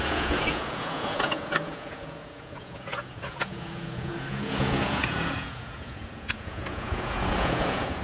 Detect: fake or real fake